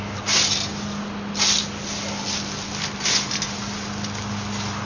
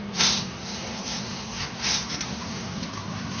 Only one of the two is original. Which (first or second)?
first